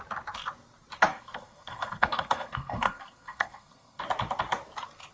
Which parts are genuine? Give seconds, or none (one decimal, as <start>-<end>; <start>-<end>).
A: 0.0-1.1; 4.0-5.1